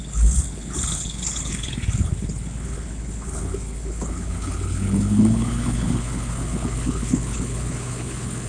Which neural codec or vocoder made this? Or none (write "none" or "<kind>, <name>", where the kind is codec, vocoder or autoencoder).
codec, HILCodec